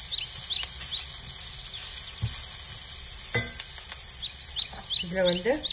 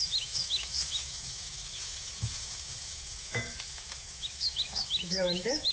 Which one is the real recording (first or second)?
first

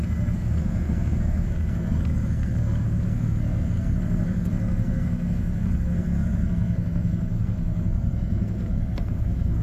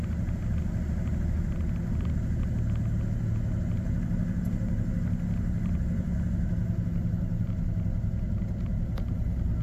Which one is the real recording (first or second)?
second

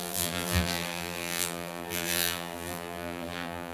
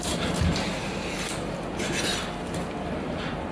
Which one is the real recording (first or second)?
second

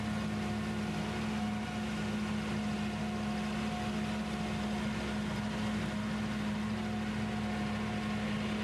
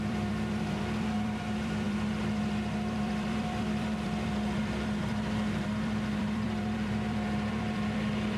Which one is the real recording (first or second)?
first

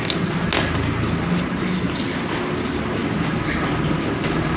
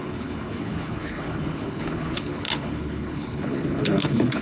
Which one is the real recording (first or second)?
first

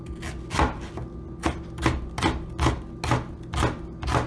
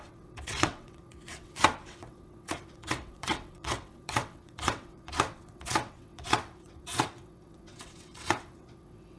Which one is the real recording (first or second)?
first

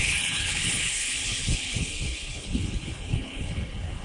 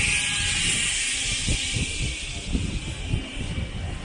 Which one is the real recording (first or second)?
second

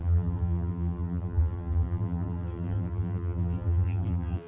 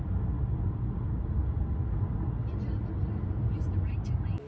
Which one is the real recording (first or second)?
second